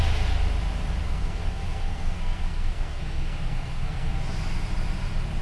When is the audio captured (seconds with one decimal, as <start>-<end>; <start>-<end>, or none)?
0.0-1.0; 4.2-5.4